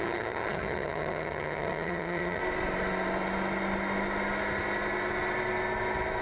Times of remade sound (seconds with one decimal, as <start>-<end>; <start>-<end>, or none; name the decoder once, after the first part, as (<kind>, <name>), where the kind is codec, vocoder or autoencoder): 0.0-2.4 (vocoder, HiFi-GAN)